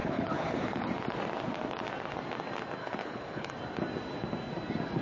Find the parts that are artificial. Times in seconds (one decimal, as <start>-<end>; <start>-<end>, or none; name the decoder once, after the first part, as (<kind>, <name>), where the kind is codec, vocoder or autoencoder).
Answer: 0.0-0.9 (codec, HILCodec); 2.8-3.5